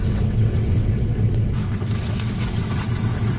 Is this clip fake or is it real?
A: fake